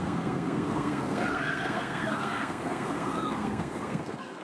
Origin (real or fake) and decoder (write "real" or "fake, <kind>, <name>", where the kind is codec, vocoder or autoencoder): fake, codec, SNAC